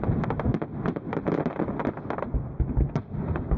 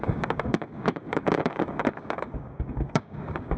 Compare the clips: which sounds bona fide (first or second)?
first